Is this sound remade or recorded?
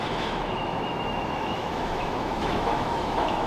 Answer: remade